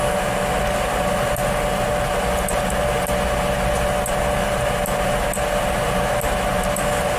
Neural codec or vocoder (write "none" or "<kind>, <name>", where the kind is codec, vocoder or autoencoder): none